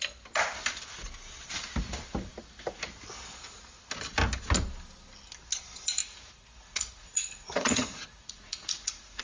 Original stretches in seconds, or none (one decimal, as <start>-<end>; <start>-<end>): 0.0-6.0